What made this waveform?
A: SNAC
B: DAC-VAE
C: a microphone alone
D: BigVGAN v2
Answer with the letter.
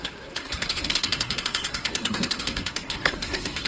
A